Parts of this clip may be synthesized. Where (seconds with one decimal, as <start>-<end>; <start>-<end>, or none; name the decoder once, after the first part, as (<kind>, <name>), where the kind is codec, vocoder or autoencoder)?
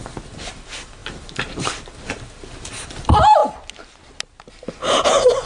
0.0-3.4 (vocoder, BigVGAN v2); 4.5-5.5